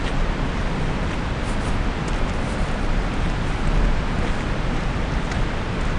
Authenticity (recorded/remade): recorded